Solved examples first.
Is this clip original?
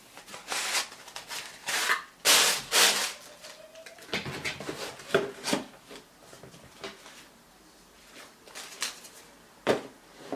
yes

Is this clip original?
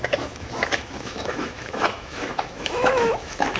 no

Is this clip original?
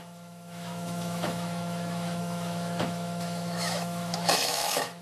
no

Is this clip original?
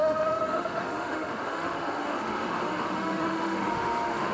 no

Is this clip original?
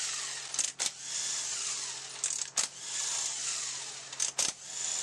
yes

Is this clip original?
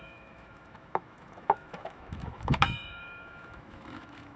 no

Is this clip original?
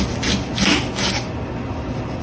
yes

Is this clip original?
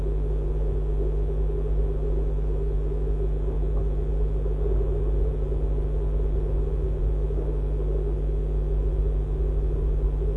yes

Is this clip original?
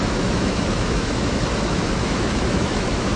no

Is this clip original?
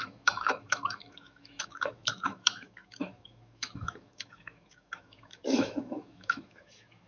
no